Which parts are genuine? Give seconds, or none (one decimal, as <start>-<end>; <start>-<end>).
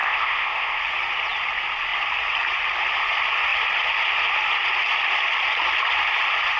0.8-6.6